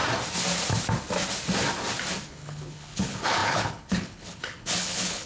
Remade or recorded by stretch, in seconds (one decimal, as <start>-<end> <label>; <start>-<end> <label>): 0.0-2.3 recorded; 2.3-5.3 remade